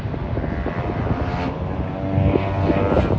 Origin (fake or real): real